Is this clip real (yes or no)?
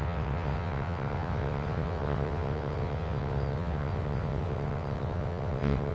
no